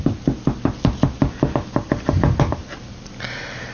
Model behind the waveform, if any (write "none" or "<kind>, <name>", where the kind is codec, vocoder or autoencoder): none